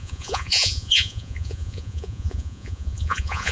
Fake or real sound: fake